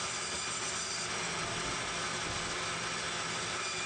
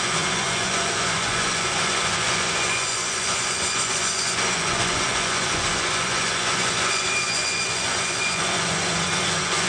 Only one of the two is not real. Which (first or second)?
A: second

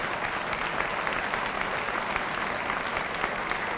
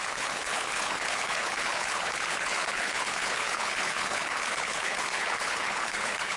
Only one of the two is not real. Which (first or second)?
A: second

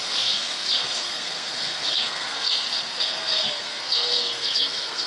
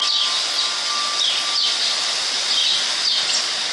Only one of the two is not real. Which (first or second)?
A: first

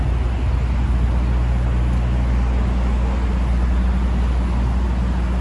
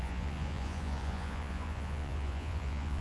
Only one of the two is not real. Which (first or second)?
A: second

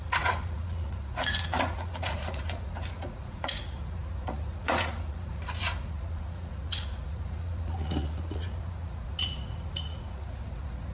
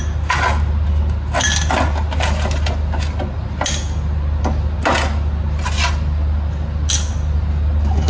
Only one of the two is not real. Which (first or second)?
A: first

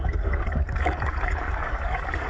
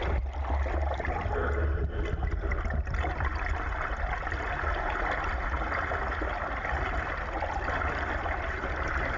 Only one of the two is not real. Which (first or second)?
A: first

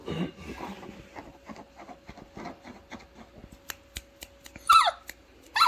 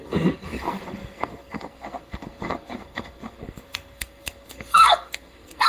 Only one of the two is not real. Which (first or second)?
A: second